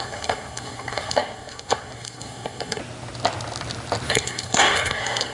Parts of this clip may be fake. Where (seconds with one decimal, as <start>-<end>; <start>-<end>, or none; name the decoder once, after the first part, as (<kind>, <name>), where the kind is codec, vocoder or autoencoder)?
0.0-2.8 (codec, SNAC); 4.1-5.3